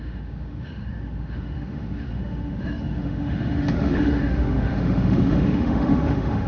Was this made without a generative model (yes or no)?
no